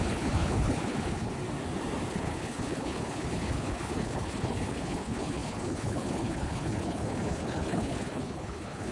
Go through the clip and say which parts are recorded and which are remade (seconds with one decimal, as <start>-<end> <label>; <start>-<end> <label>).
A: 0.0-1.3 remade; 1.3-2.1 recorded; 2.1-8.9 remade